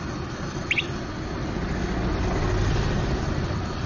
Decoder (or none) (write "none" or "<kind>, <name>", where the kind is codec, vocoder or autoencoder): none